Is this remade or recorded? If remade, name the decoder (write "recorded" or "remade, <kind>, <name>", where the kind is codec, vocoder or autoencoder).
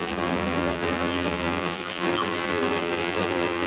remade, vocoder, BigVGAN v2